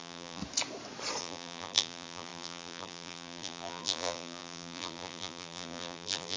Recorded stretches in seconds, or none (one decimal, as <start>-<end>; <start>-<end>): 0.4-1.2